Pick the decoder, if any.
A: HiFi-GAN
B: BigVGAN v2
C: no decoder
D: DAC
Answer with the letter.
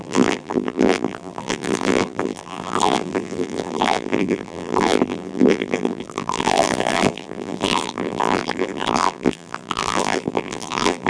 B